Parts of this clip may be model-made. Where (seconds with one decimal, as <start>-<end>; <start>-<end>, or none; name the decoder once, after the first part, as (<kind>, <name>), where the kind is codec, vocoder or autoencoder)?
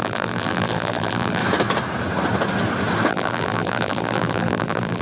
0.0-1.4 (vocoder, BigVGAN v2); 3.1-5.0